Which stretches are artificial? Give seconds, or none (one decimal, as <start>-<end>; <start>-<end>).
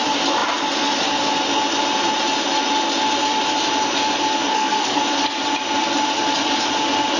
4.5-5.0